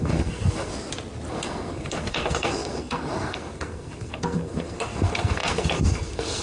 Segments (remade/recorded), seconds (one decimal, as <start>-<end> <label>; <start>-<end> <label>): 0.0-0.7 remade; 0.7-1.3 recorded; 1.3-6.4 remade